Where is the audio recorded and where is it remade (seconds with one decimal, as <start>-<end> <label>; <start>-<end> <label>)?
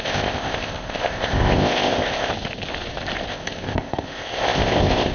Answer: 0.0-2.3 remade; 2.3-3.3 recorded; 3.3-5.1 remade